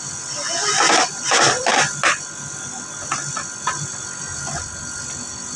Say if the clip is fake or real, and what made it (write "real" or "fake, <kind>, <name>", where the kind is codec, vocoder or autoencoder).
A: real